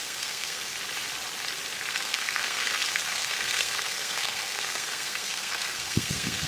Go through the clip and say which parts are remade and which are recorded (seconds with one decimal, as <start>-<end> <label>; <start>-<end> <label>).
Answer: 0.0-0.7 remade; 0.7-1.9 recorded; 1.9-6.5 remade